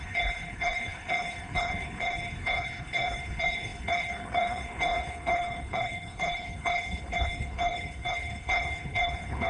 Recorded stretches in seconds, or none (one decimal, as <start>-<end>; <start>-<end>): none